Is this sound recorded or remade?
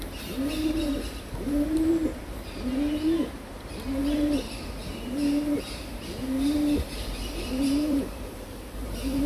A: remade